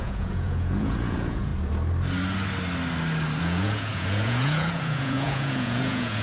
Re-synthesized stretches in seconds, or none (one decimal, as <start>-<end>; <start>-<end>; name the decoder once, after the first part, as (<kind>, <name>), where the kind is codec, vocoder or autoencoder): 0.0-1.5 (vocoder, Vocos); 3.4-6.2